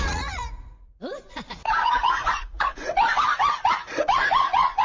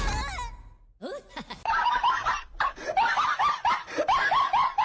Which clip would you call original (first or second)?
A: second